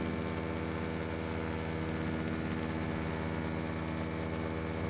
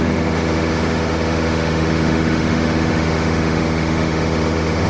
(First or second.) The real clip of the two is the first